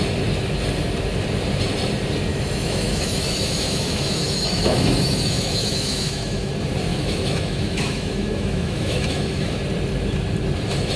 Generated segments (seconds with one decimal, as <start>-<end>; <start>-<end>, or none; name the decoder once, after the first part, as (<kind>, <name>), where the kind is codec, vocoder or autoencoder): 2.3-6.5 (autoencoder, DAC-VAE); 6.9-9.6